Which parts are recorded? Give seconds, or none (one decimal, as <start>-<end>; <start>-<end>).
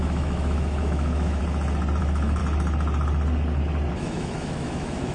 1.4-2.0; 2.4-3.9